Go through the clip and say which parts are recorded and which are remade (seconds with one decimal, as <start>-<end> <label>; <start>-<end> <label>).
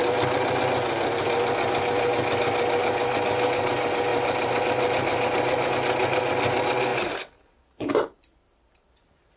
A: 0.0-4.1 recorded; 4.1-5.7 remade; 5.7-9.4 recorded